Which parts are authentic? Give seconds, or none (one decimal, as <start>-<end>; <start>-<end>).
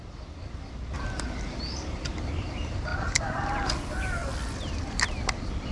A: 0.0-5.7